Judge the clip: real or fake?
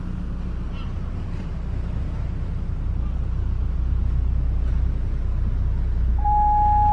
real